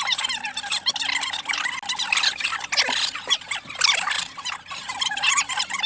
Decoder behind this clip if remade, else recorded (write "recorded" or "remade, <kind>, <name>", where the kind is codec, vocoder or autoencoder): recorded